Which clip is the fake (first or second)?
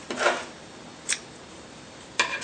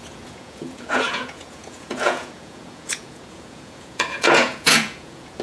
second